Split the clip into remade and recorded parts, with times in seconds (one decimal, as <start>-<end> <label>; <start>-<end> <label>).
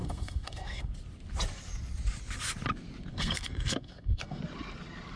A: 0.0-0.9 remade; 0.9-3.1 recorded; 3.1-4.4 remade; 4.4-5.2 recorded